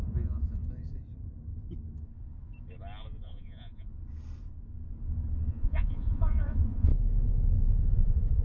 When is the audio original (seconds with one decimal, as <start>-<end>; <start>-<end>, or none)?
0.6-3.2; 3.9-5.5; 6.9-7.7